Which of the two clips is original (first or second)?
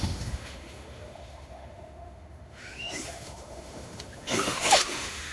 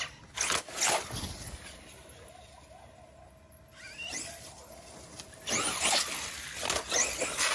second